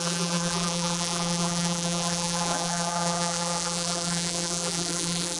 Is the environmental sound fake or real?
fake